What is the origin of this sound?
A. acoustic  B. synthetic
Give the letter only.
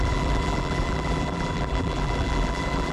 B